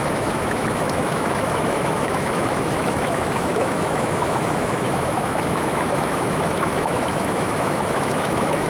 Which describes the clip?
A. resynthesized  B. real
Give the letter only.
A